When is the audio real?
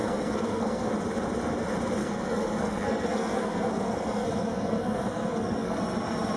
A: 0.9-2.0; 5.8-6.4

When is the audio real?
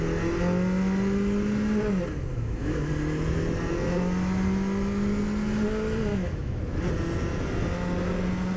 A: 0.0-2.3; 2.9-6.1; 6.6-8.6